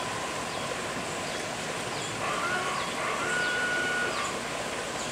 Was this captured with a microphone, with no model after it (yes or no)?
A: yes